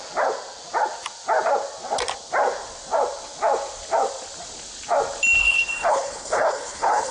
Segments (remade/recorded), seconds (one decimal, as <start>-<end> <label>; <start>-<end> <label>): 0.0-5.4 recorded; 5.4-7.1 remade